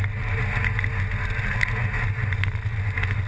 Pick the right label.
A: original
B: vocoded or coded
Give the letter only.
A